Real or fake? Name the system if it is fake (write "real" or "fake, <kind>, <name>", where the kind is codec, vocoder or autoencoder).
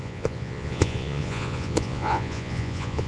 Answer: fake, vocoder, Vocos